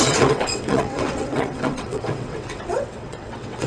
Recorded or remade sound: remade